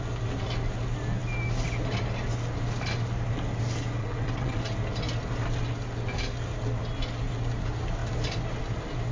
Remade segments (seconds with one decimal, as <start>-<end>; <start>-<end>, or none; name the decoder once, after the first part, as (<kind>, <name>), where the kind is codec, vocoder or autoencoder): 4.0-4.7 (vocoder, WaveNeXt)